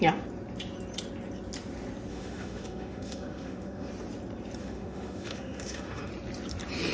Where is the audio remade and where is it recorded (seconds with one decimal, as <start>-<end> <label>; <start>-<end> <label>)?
0.0-2.1 recorded; 2.1-3.9 remade; 3.9-4.6 recorded; 4.6-6.1 remade; 6.1-6.9 recorded